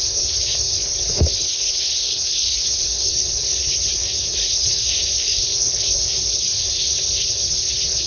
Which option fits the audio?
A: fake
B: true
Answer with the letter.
A